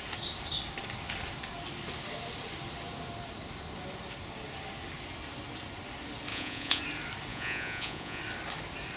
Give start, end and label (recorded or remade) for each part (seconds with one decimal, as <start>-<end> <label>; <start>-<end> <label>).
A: 0.0-6.3 recorded; 6.3-6.8 remade; 6.8-7.3 recorded; 7.3-8.2 remade; 8.2-9.0 recorded